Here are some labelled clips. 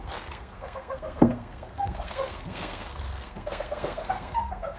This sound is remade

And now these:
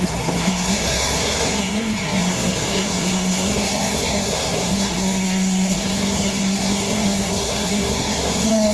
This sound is remade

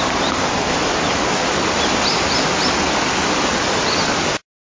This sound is recorded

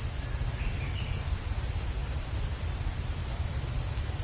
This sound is recorded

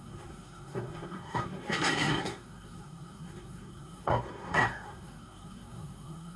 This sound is remade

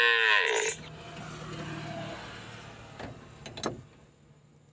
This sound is recorded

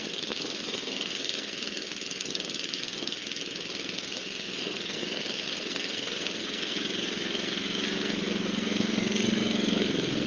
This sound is remade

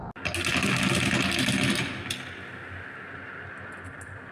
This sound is recorded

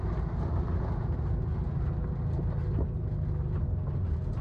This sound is recorded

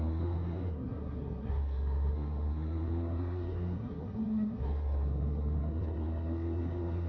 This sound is remade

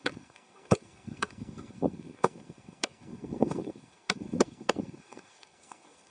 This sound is remade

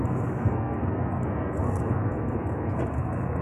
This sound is remade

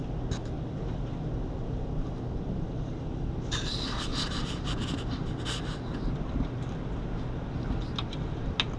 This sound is recorded